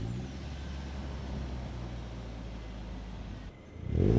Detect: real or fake real